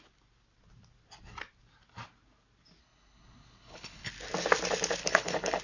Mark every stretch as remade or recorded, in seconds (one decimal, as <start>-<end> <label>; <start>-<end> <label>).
0.0-2.8 recorded; 2.8-4.1 remade; 4.1-5.0 recorded; 5.0-5.6 remade